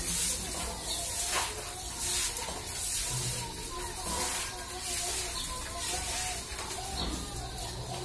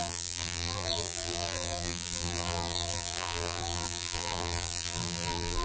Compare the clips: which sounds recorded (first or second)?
first